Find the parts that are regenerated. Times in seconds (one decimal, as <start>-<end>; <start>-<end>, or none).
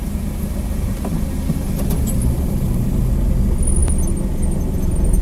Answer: 0.0-3.1